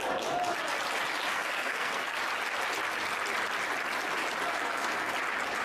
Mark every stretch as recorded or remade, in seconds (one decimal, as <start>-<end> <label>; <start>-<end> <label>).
0.0-1.3 recorded; 1.3-2.2 remade; 2.2-4.5 recorded; 4.5-5.1 remade; 5.1-5.6 recorded